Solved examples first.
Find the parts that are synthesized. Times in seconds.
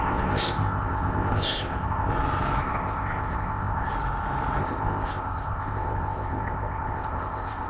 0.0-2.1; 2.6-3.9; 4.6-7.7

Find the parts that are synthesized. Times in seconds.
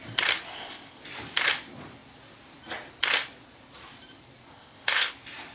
0.5-1.0; 4.5-5.1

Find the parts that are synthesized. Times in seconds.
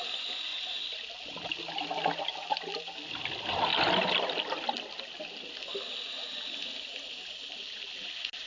none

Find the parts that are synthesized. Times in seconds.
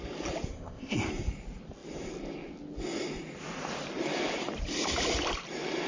0.5-1.1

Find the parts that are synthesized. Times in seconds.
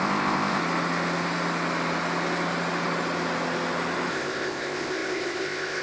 0.0-0.6; 4.1-5.8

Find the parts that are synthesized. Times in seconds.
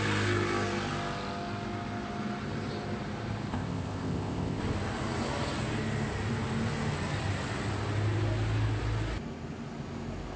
3.5-4.6